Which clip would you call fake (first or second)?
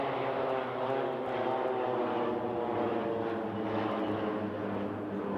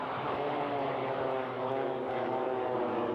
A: second